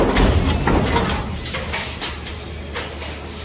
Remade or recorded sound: recorded